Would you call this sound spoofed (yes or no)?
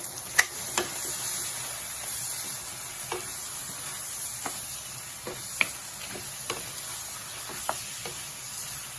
no